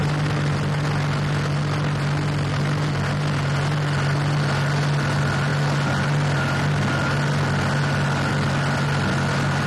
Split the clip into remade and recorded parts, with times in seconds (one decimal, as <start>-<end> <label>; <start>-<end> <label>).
0.0-9.7 recorded